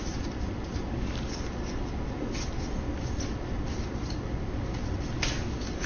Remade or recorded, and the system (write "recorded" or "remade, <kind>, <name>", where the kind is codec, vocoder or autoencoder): recorded